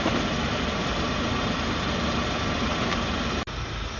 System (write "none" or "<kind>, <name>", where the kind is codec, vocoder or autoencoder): none